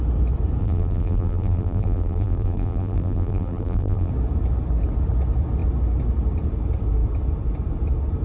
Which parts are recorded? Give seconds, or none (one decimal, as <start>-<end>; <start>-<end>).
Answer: 0.0-0.6; 4.1-8.2